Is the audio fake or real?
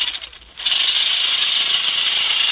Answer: real